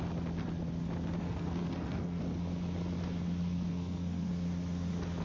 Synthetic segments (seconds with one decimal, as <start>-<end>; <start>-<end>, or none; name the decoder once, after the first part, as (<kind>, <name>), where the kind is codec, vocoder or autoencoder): 1.2-2.2 (codec, SNAC); 3.7-4.3